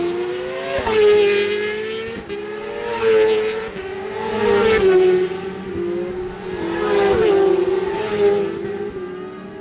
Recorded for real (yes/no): yes